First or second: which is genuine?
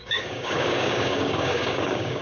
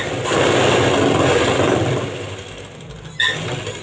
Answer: second